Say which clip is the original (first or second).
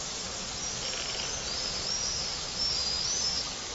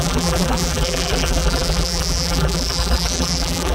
first